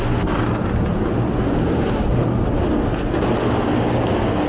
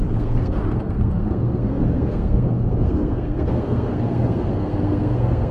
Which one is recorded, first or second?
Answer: first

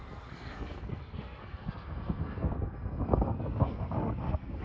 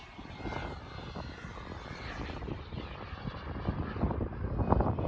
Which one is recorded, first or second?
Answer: second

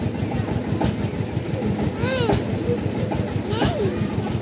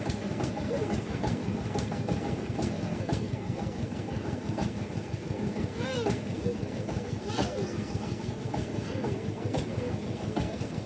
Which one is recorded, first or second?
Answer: first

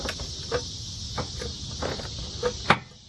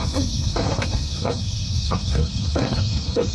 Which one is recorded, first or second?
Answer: first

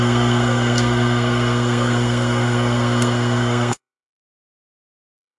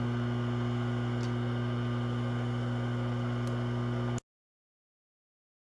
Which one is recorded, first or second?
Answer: second